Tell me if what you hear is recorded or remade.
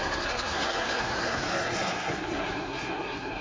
remade